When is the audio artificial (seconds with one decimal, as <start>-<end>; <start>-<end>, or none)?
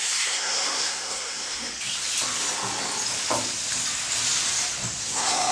0.0-1.7; 5.0-5.5